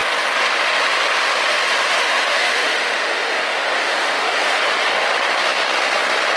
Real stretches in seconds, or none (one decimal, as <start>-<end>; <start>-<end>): 0.0-1.8; 4.6-6.4